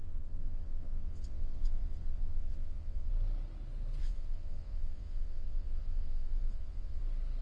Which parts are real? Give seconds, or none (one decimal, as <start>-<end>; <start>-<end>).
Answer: 3.1-4.0; 7.0-7.4

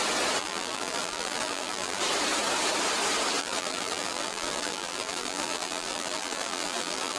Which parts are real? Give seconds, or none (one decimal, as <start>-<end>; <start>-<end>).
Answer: 0.0-0.4; 2.0-3.4

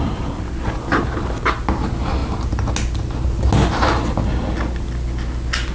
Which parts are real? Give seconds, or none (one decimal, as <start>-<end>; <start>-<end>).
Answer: 0.0-5.7

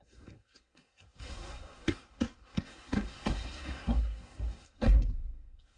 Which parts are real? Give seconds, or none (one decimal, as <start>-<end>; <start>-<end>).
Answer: none

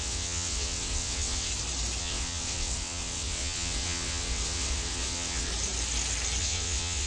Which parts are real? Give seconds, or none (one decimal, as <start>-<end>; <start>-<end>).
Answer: 1.5-2.0; 5.5-6.4